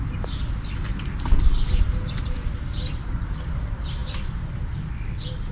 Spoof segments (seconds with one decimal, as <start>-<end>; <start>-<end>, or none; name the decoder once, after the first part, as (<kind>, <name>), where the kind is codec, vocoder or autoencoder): 0.9-3.6 (vocoder, BigVGAN v2); 4.0-4.9